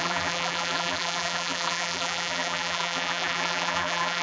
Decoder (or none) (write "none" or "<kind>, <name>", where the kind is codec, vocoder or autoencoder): vocoder, BigVGAN v2